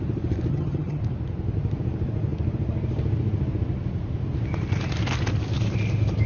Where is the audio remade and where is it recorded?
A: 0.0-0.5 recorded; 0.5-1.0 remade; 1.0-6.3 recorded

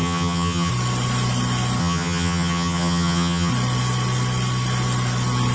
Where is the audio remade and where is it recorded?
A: 0.0-0.7 remade; 0.7-1.8 recorded; 1.8-3.5 remade; 3.5-5.5 recorded

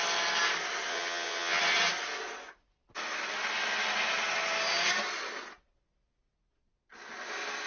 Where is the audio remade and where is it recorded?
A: 0.0-0.9 recorded; 0.9-1.6 remade; 1.6-7.7 recorded

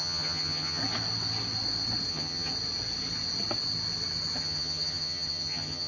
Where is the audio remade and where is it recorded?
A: 0.0-0.8 remade; 0.8-2.1 recorded; 2.1-2.5 remade; 2.5-4.4 recorded; 4.4-5.9 remade

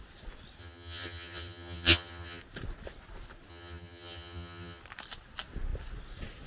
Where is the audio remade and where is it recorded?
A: 0.0-0.6 recorded; 0.6-2.4 remade; 2.4-3.5 recorded; 3.5-4.8 remade; 4.8-6.5 recorded

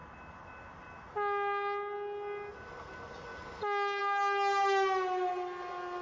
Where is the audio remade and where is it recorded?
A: 0.0-6.0 recorded

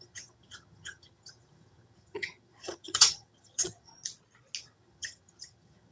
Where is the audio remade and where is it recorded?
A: 0.0-3.9 remade; 3.9-4.6 recorded; 4.6-5.9 remade

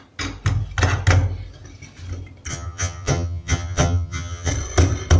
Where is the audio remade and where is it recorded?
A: 0.0-2.5 recorded; 2.5-4.5 remade; 4.5-5.2 recorded